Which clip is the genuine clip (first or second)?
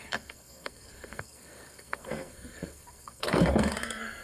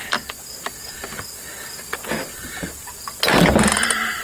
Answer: second